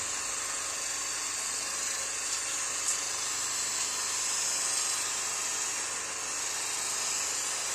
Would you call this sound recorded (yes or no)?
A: yes